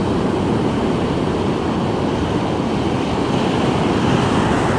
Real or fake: real